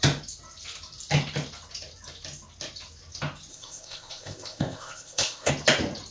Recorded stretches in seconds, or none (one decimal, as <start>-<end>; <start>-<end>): 0.0-3.5; 5.5-6.1